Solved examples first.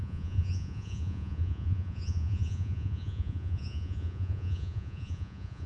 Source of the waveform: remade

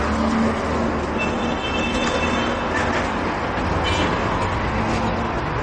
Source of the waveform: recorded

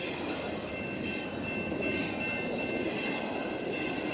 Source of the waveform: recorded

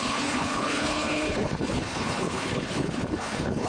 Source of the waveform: remade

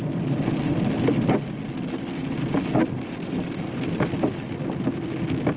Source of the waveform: recorded